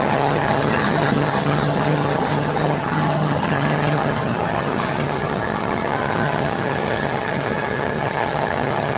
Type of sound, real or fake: fake